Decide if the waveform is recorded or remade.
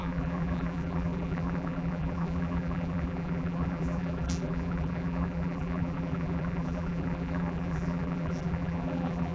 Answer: remade